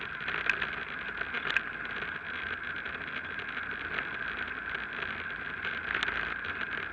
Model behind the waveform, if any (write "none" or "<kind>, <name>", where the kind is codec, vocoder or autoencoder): none